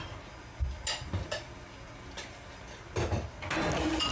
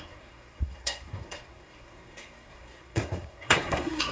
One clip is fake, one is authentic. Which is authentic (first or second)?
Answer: first